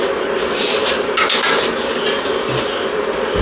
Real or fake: real